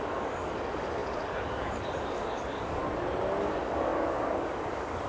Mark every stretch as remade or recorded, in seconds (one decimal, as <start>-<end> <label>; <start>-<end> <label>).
0.0-2.8 remade; 2.8-3.4 recorded; 3.4-5.1 remade